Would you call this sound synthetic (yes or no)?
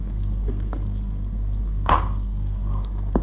yes